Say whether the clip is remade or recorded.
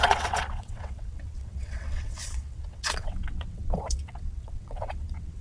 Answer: remade